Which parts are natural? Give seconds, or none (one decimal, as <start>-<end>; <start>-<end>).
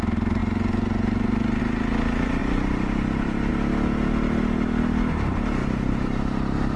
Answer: 0.0-2.4; 3.5-5.6; 6.2-6.8